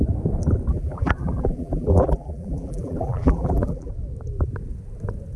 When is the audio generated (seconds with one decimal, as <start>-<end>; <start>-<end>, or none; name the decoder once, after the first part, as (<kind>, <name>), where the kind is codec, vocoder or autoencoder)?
0.7-3.9 (vocoder, BigVGAN v2)